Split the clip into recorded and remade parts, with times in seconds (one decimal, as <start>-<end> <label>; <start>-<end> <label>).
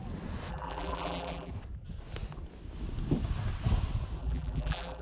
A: 0.0-0.5 recorded; 0.5-1.5 remade; 1.5-4.2 recorded; 4.2-5.0 remade